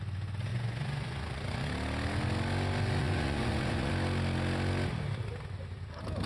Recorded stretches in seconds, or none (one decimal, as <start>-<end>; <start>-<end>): 0.0-0.5; 1.7-3.0; 3.9-6.3